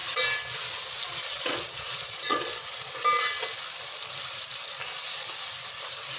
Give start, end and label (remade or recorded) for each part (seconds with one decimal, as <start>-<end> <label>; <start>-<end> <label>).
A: 0.0-1.1 recorded; 1.1-2.6 remade; 2.6-6.2 recorded